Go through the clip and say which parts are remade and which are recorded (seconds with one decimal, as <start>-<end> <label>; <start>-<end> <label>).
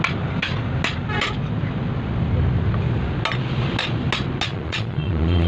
0.0-4.5 recorded; 4.5-5.5 remade